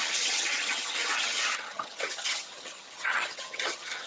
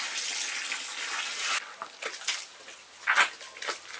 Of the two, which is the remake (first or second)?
first